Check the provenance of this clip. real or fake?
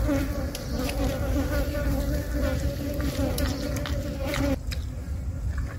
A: real